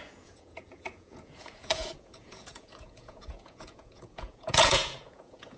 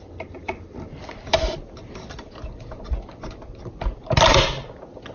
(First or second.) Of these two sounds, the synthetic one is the first